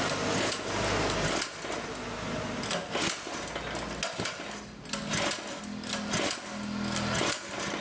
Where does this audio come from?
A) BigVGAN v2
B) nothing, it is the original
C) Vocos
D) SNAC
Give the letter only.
B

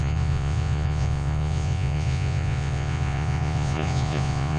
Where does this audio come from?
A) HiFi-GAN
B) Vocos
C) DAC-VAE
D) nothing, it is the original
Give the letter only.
B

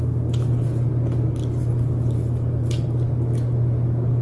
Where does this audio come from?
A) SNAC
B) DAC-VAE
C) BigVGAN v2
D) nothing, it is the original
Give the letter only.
D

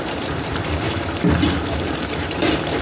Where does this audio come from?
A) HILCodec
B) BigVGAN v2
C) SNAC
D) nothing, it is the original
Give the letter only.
B